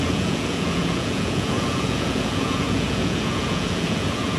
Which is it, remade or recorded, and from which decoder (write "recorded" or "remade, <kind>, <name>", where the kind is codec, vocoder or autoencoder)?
remade, vocoder, Vocos